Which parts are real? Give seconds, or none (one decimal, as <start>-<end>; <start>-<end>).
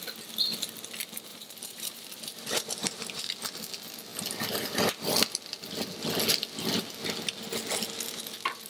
0.0-1.3; 3.3-8.7